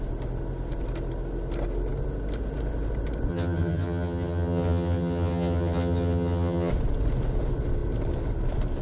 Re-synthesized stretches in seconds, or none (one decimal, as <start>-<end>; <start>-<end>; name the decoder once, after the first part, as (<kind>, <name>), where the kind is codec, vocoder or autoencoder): 3.3-6.7 (vocoder, HiFi-GAN)